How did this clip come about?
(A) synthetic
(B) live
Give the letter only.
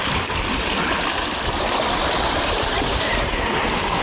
A